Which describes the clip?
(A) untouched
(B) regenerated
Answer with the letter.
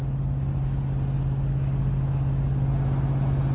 A